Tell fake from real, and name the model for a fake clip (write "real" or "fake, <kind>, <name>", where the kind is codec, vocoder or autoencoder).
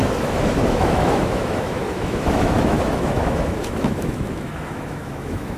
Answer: fake, autoencoder, DAC-VAE